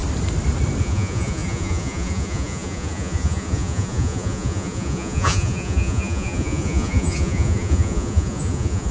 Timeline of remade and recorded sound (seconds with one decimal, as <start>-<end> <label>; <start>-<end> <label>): 0.0-0.8 recorded; 0.8-8.9 remade